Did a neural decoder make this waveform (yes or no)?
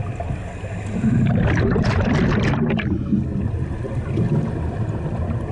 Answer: no